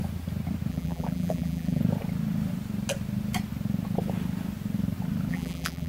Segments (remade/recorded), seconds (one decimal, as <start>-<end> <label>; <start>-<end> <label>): 0.0-0.7 recorded; 0.7-1.8 remade; 1.8-5.3 recorded; 5.3-5.9 remade